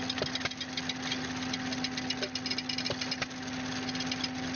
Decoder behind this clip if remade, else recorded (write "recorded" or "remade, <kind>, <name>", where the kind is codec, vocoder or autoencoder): recorded